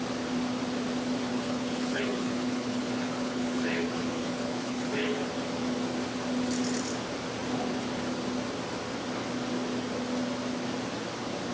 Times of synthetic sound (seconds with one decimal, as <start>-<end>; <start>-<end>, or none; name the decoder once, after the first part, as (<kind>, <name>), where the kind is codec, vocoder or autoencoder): 1.3-5.3 (codec, HILCodec)